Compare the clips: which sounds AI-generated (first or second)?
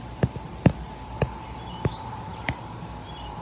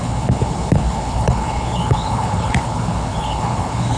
second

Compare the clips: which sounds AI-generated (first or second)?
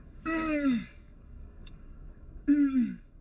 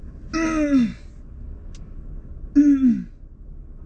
first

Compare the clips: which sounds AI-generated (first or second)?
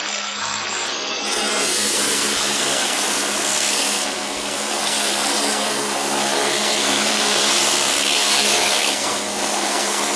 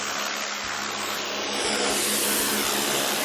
first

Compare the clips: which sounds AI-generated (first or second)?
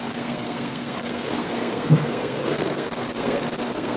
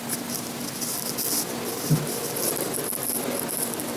first